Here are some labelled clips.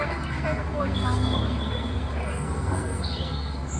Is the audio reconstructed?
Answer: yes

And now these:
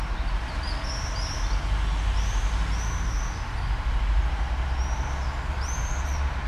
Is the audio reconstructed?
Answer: no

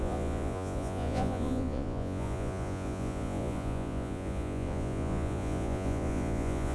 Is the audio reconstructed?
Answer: yes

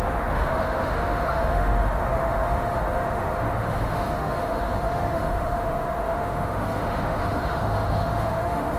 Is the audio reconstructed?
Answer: yes